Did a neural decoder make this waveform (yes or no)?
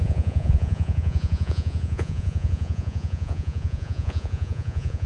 yes